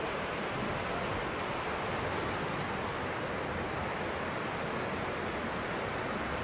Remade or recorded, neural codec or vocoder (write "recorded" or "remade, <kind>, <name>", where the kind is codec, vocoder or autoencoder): recorded